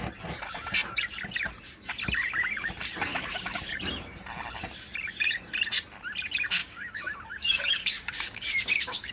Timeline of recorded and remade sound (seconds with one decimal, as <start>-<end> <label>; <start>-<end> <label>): 0.0-3.1 recorded; 3.1-3.7 remade; 3.7-6.6 recorded; 6.6-9.1 remade

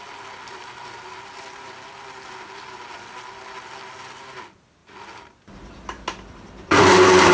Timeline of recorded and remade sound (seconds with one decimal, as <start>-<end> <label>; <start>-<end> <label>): 0.0-7.3 recorded